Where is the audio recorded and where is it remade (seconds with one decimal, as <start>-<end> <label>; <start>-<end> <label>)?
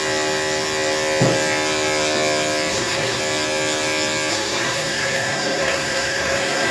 0.0-2.7 recorded; 2.7-3.2 remade; 3.2-4.3 recorded; 4.3-6.7 remade